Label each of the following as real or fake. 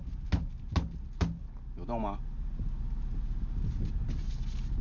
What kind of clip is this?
real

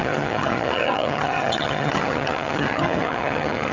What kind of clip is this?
fake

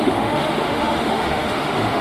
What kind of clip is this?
fake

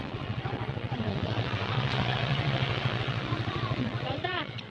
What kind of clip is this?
fake